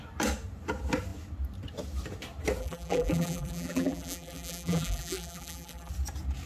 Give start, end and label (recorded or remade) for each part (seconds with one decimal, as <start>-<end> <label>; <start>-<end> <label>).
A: 0.0-2.6 recorded; 2.6-5.9 remade; 5.9-6.5 recorded